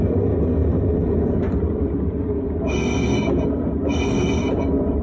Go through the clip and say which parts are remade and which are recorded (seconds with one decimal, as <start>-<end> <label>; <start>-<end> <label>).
0.0-5.0 recorded